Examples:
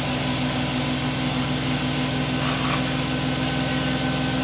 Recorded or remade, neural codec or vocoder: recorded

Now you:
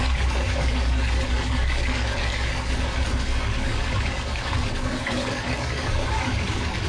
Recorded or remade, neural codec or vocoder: remade, codec, DAC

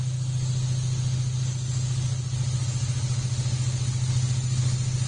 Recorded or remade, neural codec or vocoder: recorded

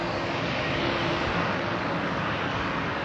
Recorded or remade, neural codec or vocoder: remade, codec, DAC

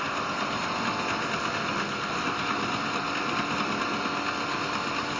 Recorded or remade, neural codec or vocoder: recorded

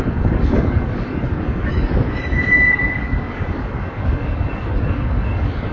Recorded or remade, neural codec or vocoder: remade, codec, DAC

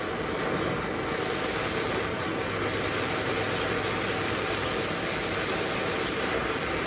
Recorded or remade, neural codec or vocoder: recorded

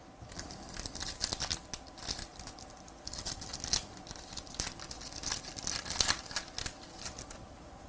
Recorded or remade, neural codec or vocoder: recorded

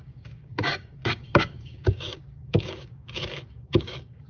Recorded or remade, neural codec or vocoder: remade, codec, DAC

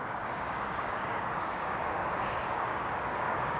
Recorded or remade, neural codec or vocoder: remade, codec, DAC